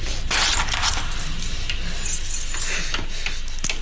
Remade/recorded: recorded